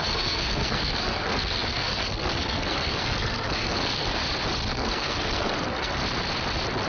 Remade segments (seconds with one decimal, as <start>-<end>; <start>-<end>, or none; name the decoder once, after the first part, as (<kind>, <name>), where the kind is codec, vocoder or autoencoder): 0.0-4.2 (codec, SNAC); 4.7-6.0